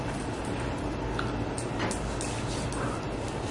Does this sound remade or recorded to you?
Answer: recorded